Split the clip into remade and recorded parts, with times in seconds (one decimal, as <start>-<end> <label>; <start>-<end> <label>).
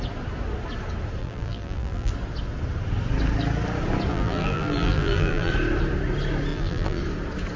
0.0-1.2 recorded; 1.2-2.1 remade; 2.1-4.1 recorded; 4.1-5.5 remade; 5.5-6.5 recorded; 6.5-7.0 remade; 7.0-7.6 recorded